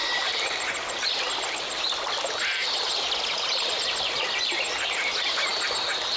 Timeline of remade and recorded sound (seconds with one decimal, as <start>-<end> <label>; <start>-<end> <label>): 0.0-6.2 recorded